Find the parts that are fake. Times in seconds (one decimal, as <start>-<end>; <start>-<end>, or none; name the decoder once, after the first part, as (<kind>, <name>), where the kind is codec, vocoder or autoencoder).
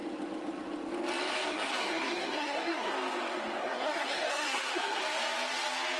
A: 1.5-2.9 (codec, SNAC); 3.6-5.0